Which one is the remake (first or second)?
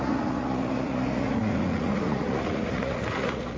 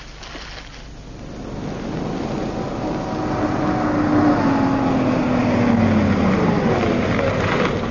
first